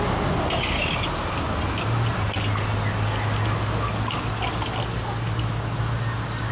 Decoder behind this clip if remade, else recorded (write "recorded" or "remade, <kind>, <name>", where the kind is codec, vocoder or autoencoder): recorded